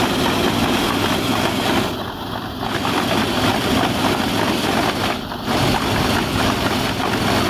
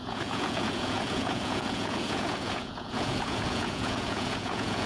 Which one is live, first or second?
first